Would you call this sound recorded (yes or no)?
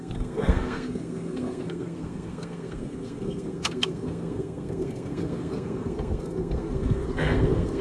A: no